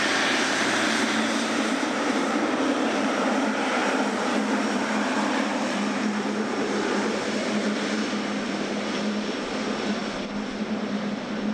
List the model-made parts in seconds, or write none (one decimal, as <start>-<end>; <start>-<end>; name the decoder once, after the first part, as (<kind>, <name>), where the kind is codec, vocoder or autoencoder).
0.0-10.0 (vocoder, BigVGAN v2); 10.6-11.5